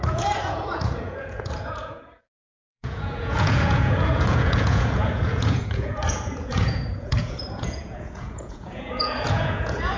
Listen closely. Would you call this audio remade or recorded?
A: remade